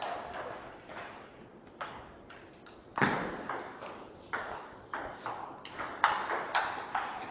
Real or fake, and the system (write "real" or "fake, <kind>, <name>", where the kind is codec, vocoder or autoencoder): real